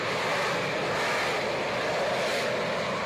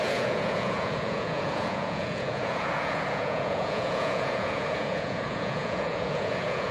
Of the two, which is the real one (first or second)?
first